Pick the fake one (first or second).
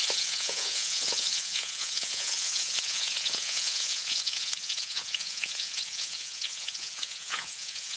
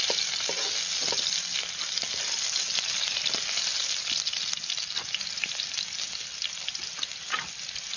first